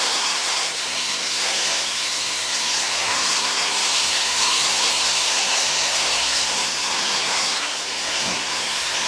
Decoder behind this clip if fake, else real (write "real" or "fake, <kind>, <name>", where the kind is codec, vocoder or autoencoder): fake, codec, SNAC